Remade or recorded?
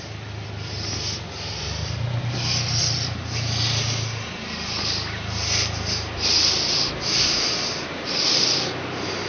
recorded